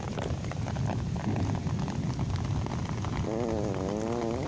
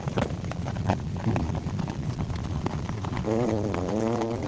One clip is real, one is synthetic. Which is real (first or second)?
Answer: first